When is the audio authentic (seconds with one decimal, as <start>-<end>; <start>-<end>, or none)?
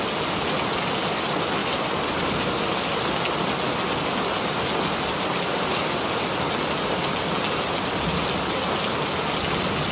0.0-9.9